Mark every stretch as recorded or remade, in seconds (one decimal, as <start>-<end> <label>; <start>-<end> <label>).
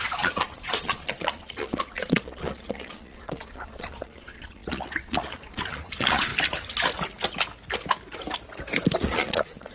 0.0-6.3 remade; 6.3-9.0 recorded; 9.0-9.7 remade